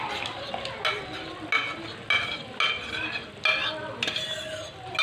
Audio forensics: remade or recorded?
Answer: recorded